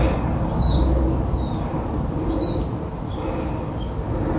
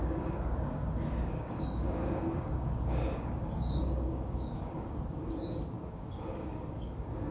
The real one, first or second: first